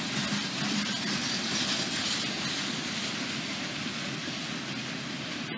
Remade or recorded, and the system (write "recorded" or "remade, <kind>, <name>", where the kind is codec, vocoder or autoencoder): recorded